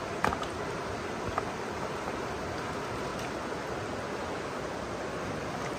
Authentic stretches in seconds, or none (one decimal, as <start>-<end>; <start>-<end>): 0.0-5.8